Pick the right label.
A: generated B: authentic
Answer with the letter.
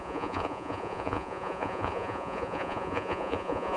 A